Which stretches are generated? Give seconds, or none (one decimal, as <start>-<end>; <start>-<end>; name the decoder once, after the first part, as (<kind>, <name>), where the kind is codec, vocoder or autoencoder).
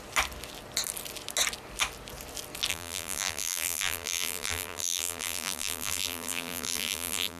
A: 2.7-7.4 (vocoder, BigVGAN v2)